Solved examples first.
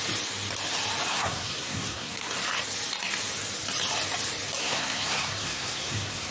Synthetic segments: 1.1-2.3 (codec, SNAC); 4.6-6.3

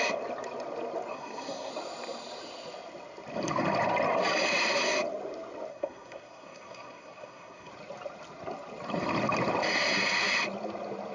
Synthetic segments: 1.1-1.7 (codec, SNAC); 5.7-7.7

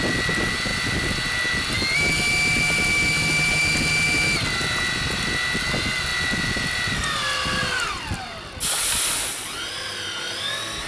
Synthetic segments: none